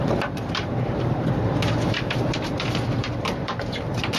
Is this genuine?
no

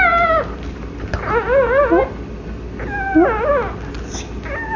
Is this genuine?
yes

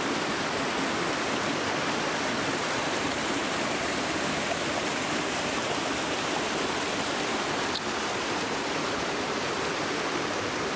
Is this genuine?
no